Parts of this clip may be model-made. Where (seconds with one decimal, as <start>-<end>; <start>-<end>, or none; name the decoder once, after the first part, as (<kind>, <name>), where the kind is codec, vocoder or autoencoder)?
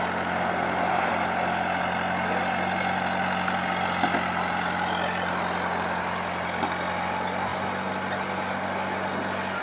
none